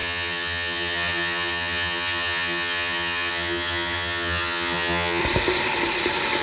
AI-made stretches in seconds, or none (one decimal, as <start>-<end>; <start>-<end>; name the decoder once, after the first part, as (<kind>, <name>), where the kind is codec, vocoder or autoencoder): 0.0-5.2 (vocoder, HiFi-GAN)